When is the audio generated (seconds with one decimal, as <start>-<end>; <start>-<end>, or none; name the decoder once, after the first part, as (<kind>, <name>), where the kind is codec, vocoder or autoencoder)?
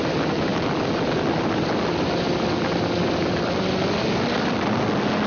none